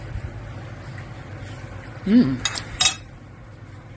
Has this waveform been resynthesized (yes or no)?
no